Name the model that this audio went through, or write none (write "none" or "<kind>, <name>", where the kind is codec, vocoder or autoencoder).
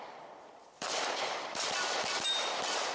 vocoder, BigVGAN v2